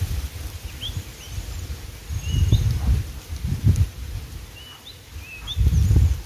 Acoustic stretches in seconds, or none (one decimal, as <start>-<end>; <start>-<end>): 0.0-6.3

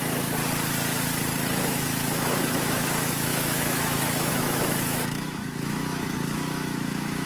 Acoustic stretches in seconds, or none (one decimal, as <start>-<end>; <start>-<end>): 0.4-1.6

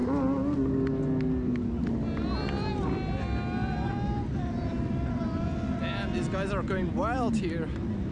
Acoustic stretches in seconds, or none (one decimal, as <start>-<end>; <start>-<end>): 0.0-8.1

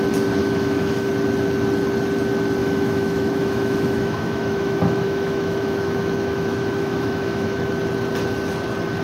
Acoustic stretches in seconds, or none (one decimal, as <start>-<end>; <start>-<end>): 0.0-0.4; 1.1-2.6; 7.7-9.0

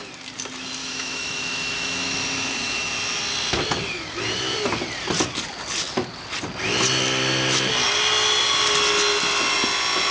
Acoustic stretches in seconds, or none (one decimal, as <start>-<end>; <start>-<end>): 0.0-0.8; 2.9-10.1

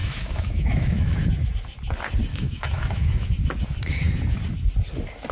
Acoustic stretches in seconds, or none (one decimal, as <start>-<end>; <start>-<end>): 1.3-2.3; 3.3-5.3

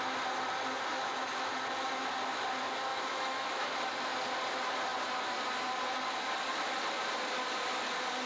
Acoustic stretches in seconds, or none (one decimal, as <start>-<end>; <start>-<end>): 0.0-0.9; 1.5-2.9; 3.6-8.3

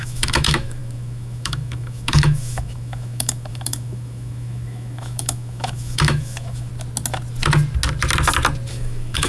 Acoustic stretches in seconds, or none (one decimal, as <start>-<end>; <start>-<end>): 6.7-8.7